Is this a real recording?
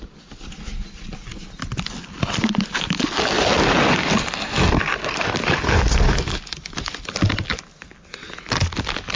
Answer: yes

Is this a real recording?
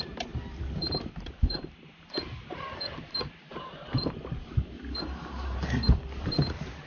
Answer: no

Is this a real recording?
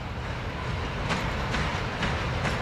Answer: yes